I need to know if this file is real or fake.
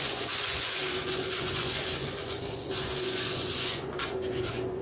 fake